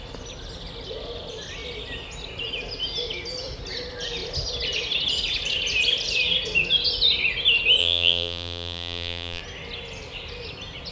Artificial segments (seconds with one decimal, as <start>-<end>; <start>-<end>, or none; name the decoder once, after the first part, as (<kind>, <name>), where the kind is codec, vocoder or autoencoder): 7.8-9.4 (vocoder, BigVGAN v2)

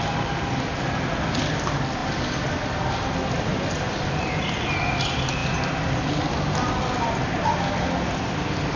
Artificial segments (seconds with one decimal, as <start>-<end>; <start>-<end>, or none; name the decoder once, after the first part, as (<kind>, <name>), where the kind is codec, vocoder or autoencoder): 2.0-2.9 (vocoder, BigVGAN v2); 3.5-4.4; 5.4-6.8